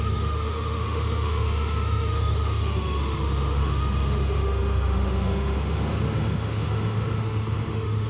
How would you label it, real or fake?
fake